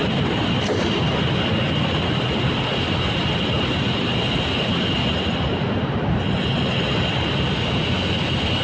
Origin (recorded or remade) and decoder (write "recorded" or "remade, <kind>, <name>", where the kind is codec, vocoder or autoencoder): recorded